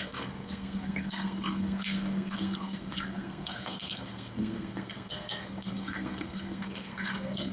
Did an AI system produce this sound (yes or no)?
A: yes